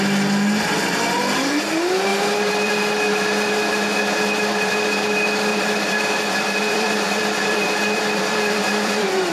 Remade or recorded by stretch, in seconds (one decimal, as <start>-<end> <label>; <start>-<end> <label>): 0.0-2.1 recorded; 2.1-2.7 remade; 2.7-5.5 recorded; 5.5-9.3 remade